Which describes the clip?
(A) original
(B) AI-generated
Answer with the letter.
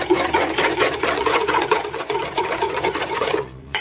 B